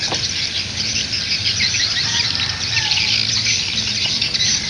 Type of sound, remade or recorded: recorded